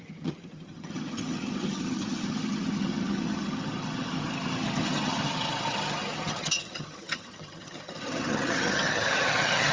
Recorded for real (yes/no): no